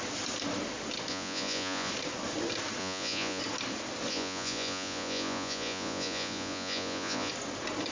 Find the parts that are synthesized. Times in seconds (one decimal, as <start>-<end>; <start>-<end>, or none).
1.1-1.9; 2.8-3.4; 4.1-7.3